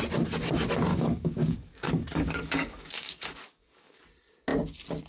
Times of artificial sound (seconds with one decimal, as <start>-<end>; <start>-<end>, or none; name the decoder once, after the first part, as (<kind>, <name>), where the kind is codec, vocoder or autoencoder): 0.9-4.0 (codec, DAC)